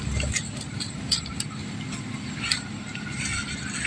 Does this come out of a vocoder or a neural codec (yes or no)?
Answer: no